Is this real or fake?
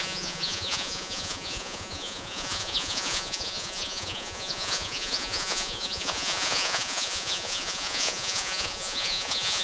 fake